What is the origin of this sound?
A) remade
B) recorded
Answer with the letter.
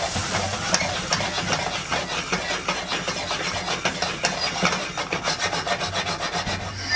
B